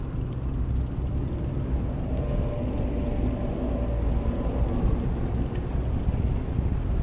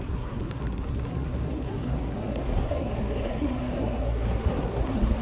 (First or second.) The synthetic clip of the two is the second